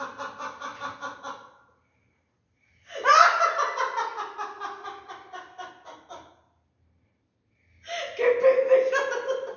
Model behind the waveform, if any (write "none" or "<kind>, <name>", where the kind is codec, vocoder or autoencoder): none